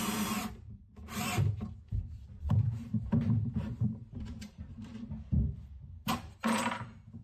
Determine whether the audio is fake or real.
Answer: fake